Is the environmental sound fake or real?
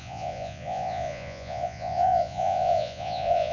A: fake